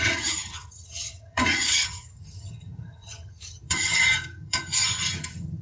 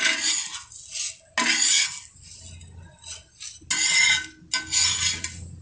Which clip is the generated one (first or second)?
first